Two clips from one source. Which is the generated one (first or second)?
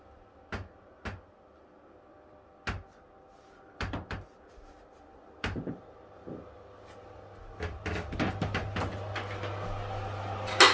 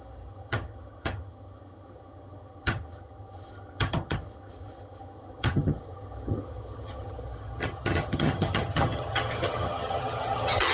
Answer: second